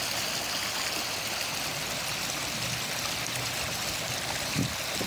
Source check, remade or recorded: recorded